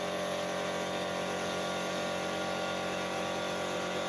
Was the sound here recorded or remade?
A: recorded